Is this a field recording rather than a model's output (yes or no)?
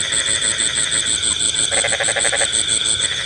yes